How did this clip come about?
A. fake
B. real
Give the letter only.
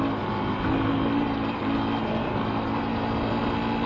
B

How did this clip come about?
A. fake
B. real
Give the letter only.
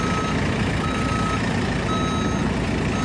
B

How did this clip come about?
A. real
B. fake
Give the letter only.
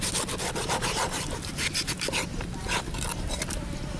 A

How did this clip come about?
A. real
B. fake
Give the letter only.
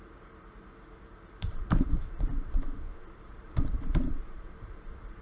B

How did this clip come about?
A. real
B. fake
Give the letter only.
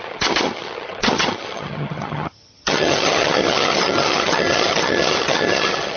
B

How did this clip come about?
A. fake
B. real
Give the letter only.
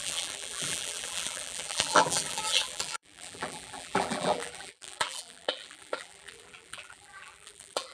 A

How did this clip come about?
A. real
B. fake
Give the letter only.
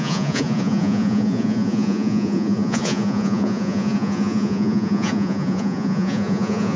B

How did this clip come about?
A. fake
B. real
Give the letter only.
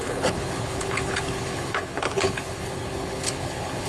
A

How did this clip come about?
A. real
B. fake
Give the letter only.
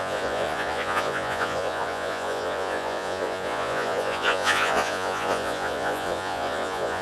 B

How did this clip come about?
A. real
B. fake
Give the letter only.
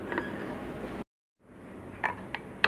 A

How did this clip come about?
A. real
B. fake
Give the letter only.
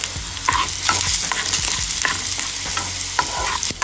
A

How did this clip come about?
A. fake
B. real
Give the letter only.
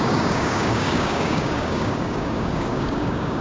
A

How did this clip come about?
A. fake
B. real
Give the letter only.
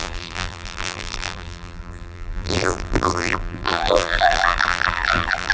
A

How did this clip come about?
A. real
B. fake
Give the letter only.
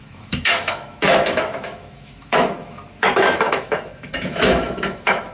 B